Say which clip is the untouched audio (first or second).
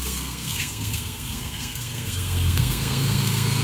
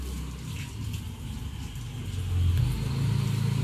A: second